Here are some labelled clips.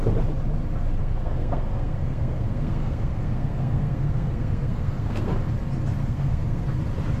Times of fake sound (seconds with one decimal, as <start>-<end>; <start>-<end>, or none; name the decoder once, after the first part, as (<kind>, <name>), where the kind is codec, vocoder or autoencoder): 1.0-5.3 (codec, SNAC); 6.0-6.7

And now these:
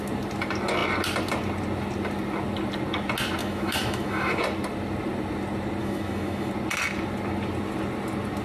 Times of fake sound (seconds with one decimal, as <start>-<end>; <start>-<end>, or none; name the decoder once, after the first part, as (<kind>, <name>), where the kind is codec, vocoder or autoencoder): 3.4-4.4 (autoencoder, DAC-VAE); 5.8-6.5

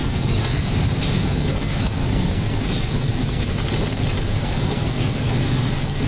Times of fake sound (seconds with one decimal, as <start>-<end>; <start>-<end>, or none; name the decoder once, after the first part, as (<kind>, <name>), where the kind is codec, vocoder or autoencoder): 0.0-0.7 (codec, SNAC); 1.2-3.6; 4.3-6.1

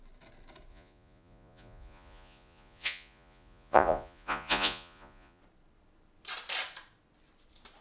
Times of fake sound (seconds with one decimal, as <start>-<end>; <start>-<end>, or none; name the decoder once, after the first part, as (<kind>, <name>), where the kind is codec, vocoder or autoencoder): 0.7-5.4 (vocoder, Vocos)